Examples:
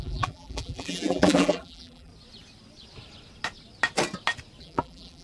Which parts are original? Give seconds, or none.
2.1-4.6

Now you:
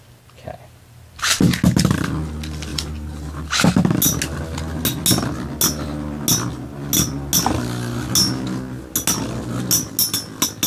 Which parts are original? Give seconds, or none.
0.0-2.7; 3.7-10.7

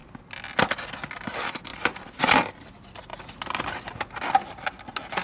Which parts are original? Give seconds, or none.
0.0-1.7; 2.7-5.2

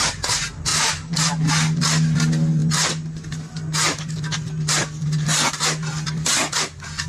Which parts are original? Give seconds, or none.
0.0-0.7; 1.5-7.1

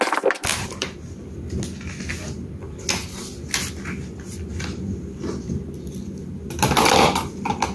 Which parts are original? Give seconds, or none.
0.0-0.5; 1.1-7.7

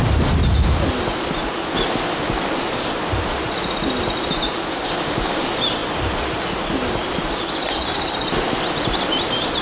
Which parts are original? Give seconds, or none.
0.4-5.3

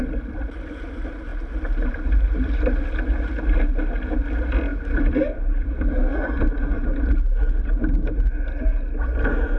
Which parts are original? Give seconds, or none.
0.0-4.7; 5.9-9.6